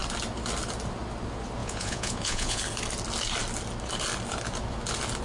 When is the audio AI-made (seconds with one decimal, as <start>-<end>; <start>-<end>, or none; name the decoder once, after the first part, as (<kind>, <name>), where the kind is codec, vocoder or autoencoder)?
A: 1.6-2.6 (vocoder, Vocos)